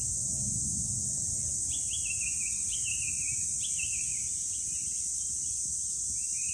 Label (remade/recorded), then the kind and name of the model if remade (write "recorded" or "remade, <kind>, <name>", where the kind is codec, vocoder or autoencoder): recorded